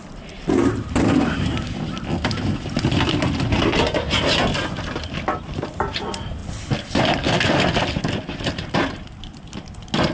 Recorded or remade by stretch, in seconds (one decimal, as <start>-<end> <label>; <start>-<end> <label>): 0.0-10.1 recorded